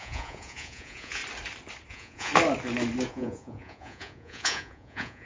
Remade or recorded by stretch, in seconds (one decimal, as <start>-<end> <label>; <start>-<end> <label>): 0.0-1.2 remade; 1.2-1.9 recorded; 1.9-2.3 remade; 2.3-3.1 recorded; 3.1-5.3 remade